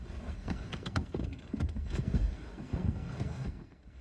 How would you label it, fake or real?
fake